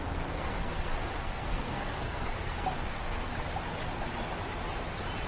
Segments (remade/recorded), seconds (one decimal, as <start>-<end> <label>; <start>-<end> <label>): 0.0-3.2 remade; 3.2-5.3 recorded